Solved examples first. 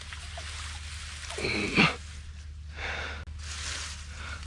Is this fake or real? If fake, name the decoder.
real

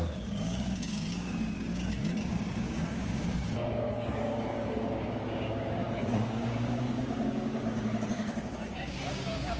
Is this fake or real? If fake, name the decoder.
fake, codec, DAC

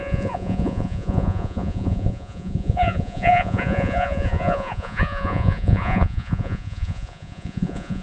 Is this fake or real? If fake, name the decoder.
fake, vocoder, Vocos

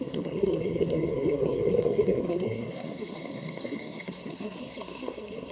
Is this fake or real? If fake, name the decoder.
fake, codec, SNAC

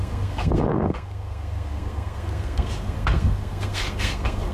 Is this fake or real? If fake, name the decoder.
fake, codec, SNAC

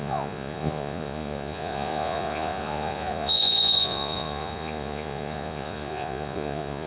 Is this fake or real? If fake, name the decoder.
fake, vocoder, Vocos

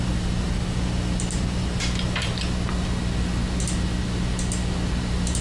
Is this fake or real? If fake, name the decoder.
real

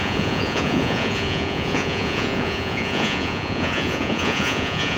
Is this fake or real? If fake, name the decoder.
fake, vocoder, Vocos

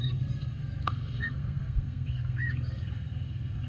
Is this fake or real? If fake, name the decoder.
fake, codec, SNAC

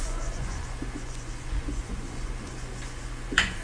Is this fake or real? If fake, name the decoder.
fake, vocoder, Vocos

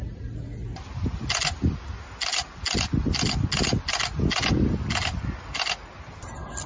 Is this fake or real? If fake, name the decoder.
real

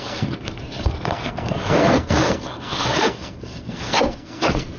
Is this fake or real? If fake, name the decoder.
fake, codec, SNAC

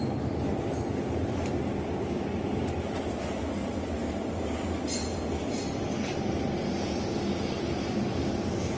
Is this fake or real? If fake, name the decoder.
real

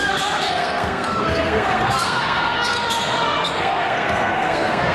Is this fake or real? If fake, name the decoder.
fake, codec, SNAC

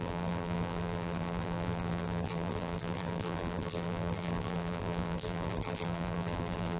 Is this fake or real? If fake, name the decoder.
fake, vocoder, BigVGAN v2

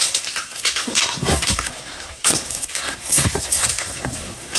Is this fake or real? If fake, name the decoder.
fake, codec, SNAC